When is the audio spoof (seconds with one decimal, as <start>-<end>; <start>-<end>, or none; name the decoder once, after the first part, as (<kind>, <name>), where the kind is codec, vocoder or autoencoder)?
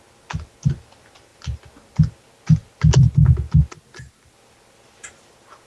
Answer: none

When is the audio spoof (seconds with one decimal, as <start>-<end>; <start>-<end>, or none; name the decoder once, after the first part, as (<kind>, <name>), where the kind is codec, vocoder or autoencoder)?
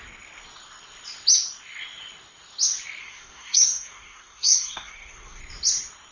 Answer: 3.0-5.4 (codec, SNAC)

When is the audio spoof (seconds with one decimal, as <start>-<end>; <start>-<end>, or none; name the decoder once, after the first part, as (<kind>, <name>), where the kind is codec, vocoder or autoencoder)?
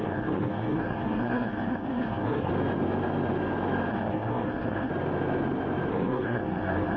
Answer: 0.0-2.5 (codec, SNAC); 3.9-4.9; 5.9-7.0